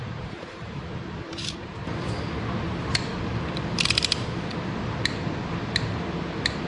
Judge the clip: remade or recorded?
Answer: remade